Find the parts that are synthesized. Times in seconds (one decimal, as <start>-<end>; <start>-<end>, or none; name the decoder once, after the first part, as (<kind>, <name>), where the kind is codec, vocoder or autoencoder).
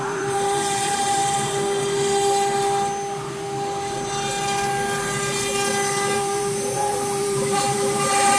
0.0-1.2 (vocoder, BigVGAN v2); 6.1-8.4